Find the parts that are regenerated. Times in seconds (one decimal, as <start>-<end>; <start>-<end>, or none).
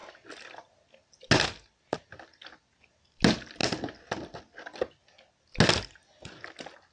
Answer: none